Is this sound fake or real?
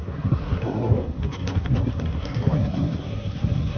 fake